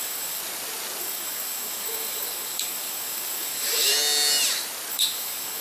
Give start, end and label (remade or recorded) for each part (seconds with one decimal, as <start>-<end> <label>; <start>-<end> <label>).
0.0-0.4 remade; 0.4-1.0 recorded; 1.0-3.9 remade; 3.9-4.9 recorded; 4.9-5.6 remade

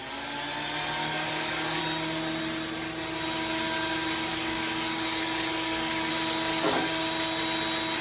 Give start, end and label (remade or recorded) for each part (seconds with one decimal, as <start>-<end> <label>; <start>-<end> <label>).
0.0-1.0 recorded; 1.0-1.8 remade; 1.8-4.3 recorded; 4.3-6.1 remade; 6.1-6.5 recorded; 6.5-7.0 remade; 7.0-8.0 recorded

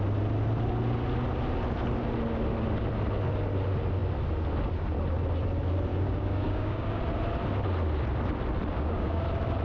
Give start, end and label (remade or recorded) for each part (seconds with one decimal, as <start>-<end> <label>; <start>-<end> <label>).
0.0-5.9 recorded; 5.9-7.0 remade; 7.0-8.7 recorded; 8.7-9.2 remade; 9.2-9.6 recorded